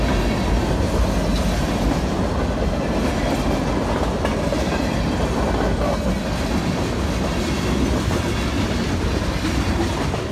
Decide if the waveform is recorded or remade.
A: recorded